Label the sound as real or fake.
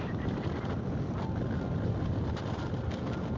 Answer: real